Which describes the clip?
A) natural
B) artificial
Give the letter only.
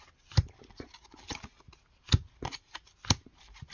A